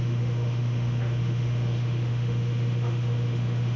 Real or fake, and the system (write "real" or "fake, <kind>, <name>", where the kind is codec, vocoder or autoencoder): fake, autoencoder, DAC-VAE